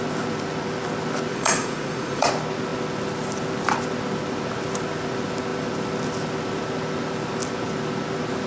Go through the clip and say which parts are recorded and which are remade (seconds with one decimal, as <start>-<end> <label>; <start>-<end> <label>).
0.0-1.3 recorded; 1.3-2.3 remade; 2.3-8.5 recorded